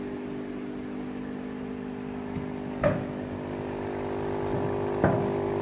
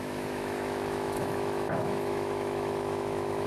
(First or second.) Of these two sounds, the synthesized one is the second